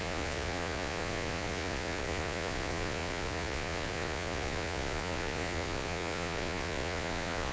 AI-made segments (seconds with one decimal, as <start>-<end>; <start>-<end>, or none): 0.0-7.5